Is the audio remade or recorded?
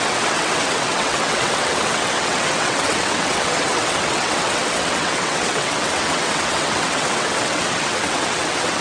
remade